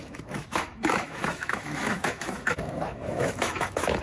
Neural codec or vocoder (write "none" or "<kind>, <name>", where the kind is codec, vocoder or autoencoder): autoencoder, DAC-VAE